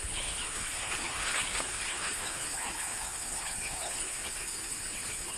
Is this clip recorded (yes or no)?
no